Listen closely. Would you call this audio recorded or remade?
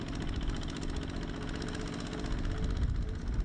recorded